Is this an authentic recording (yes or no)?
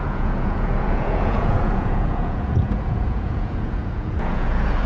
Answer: no